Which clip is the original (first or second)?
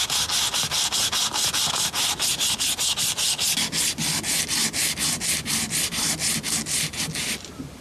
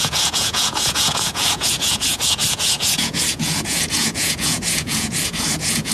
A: first